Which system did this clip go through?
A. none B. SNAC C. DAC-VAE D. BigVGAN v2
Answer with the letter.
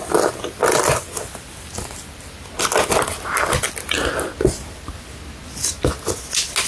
A